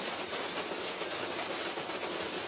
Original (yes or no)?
yes